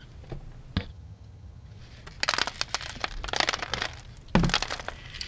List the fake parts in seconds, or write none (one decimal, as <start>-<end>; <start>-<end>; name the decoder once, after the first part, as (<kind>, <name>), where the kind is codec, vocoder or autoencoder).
0.9-1.8 (vocoder, HiFi-GAN)